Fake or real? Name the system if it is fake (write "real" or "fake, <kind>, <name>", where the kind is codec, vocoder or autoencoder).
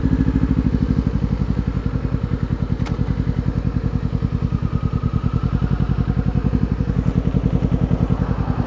real